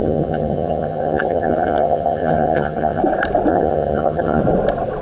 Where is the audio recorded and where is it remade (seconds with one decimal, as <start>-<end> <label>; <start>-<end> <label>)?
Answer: 0.0-3.0 remade; 3.0-3.5 recorded; 3.5-4.4 remade; 4.4-5.0 recorded